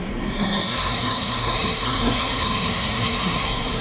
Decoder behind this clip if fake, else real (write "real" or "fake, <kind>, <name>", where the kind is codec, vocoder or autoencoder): fake, codec, SNAC